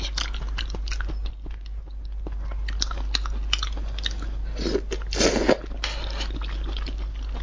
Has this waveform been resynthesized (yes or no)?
no